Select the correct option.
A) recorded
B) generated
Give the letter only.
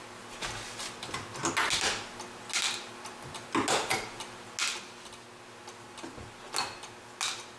A